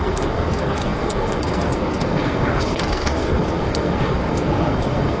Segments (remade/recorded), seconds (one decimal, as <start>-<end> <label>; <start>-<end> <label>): 0.0-5.2 remade